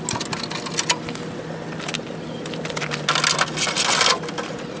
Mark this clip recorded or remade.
recorded